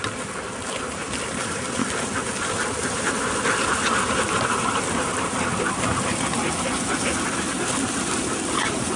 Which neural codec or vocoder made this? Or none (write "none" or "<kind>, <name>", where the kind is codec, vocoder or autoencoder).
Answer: none